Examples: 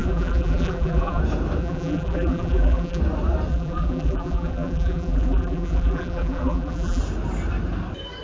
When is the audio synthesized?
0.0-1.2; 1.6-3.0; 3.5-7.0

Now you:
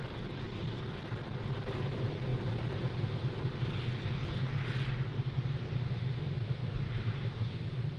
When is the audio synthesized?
5.1-6.1; 6.6-7.2

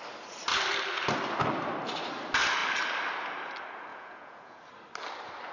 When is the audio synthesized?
3.9-4.6